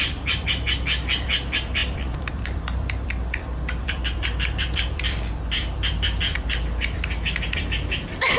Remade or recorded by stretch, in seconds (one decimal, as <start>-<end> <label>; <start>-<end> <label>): 0.0-8.4 remade